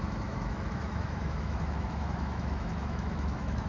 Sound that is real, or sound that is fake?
fake